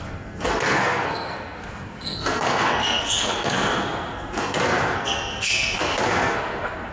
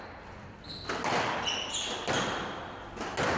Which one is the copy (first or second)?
first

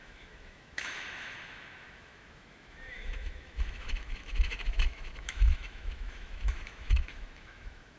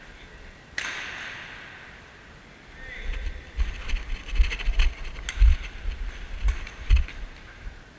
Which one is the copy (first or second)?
first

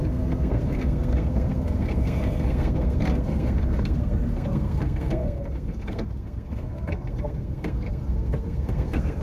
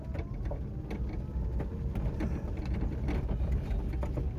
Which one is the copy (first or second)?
first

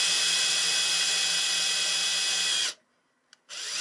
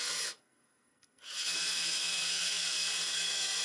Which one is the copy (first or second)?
second